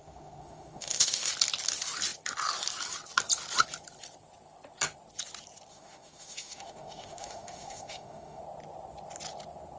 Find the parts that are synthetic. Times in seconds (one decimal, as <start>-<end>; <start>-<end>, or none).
0.0-1.3; 5.7-8.4